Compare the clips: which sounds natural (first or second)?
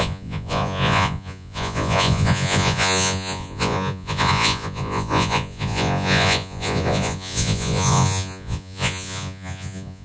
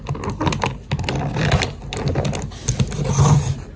second